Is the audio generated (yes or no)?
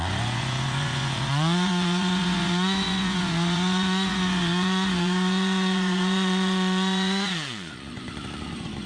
yes